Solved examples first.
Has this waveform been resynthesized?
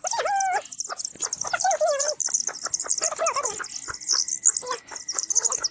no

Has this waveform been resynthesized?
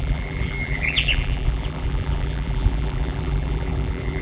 yes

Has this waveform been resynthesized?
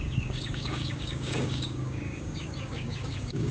yes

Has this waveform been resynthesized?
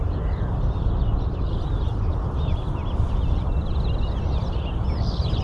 no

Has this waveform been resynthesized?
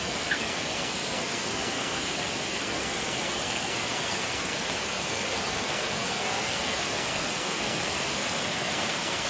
yes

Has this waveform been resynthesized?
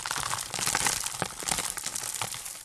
no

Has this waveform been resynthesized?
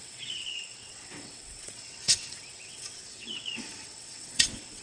yes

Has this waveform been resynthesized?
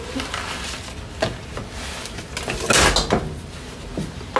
no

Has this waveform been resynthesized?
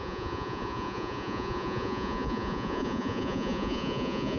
yes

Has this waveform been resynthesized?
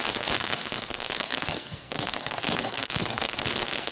yes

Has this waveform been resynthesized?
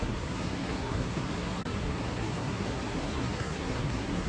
yes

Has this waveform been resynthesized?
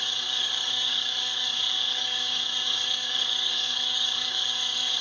yes